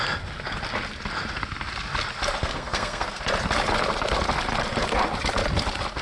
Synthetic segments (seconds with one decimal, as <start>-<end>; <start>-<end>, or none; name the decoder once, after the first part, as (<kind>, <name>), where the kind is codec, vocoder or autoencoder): 2.4-3.2 (codec, SNAC)